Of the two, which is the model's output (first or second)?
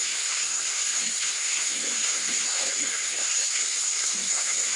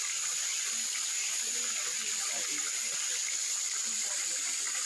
first